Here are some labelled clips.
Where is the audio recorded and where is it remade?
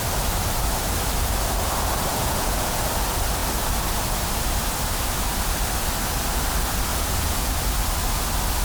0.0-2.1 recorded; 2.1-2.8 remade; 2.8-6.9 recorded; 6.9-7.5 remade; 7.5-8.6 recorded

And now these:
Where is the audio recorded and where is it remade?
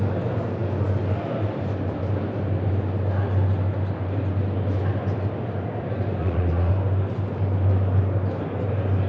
0.0-6.2 recorded; 6.2-6.7 remade; 6.7-9.1 recorded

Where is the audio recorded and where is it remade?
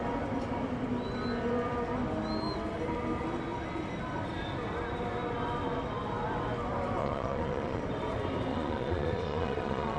0.0-7.0 recorded; 7.0-7.8 remade; 7.8-8.5 recorded; 8.5-10.0 remade